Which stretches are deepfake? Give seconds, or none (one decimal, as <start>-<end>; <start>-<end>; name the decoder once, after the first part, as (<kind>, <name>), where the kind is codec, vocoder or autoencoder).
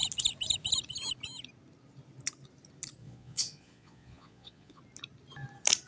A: 3.0-4.8 (vocoder, Vocos)